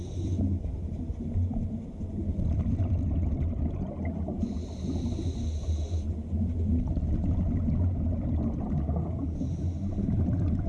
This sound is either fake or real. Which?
real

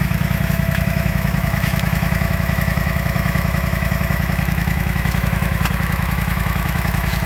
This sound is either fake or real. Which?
fake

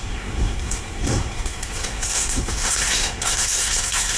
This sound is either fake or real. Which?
fake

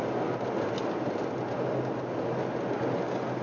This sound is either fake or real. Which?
real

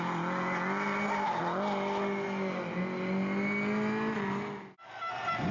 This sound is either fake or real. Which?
real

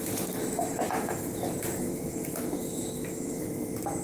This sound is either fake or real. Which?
fake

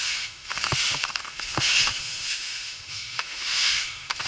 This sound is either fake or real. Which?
fake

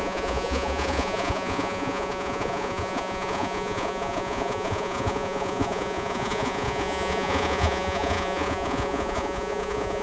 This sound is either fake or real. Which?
fake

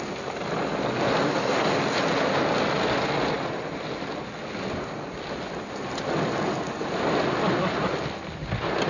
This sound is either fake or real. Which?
real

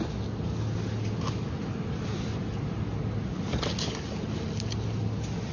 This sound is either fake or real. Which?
real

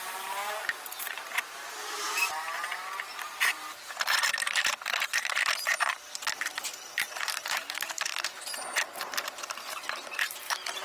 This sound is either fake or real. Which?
fake